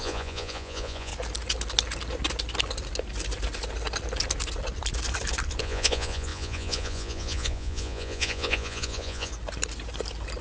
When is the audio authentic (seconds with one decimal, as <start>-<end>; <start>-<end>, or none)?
1.1-5.6; 9.3-10.4